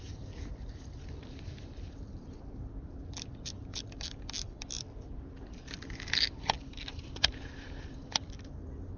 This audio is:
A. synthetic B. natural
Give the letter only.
A